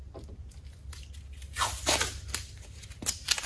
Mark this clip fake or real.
real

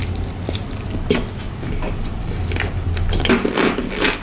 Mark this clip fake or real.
real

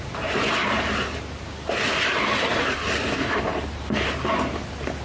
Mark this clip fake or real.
fake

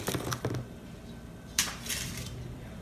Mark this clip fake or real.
real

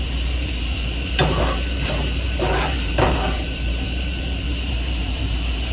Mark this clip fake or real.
fake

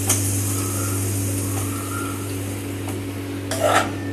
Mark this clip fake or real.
real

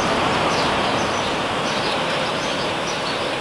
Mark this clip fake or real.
fake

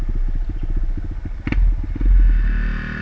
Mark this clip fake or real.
real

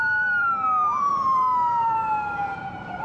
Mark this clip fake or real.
fake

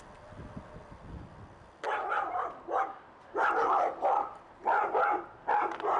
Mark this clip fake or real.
real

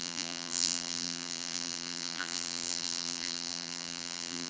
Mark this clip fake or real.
fake